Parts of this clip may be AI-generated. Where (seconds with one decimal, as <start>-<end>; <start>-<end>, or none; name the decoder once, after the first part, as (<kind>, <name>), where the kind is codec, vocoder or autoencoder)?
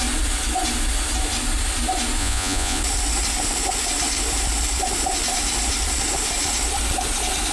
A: 2.2-2.8 (vocoder, Vocos)